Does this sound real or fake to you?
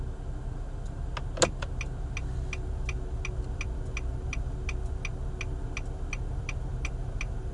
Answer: real